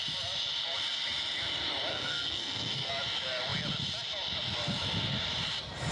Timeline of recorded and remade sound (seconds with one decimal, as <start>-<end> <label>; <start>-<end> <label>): 0.0-1.9 recorded; 1.9-2.9 remade; 2.9-5.9 recorded